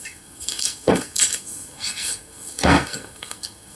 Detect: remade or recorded remade